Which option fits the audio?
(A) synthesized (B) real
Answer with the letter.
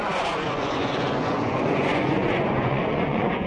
A